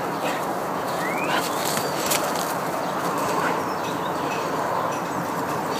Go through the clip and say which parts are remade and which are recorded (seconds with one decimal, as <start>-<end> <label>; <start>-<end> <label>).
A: 0.0-0.6 recorded; 0.6-1.1 remade; 1.1-5.8 recorded